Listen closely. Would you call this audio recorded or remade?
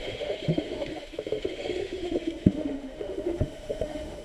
remade